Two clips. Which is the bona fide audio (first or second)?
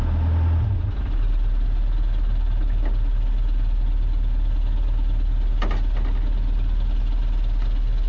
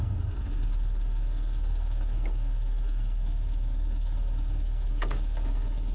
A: first